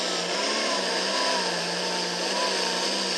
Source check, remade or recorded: recorded